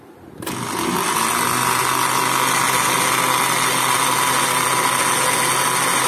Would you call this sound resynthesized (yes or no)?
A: no